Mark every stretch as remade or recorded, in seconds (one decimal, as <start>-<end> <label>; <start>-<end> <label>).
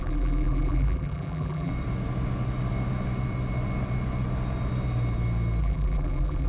0.0-1.7 remade; 1.7-5.6 recorded; 5.6-6.5 remade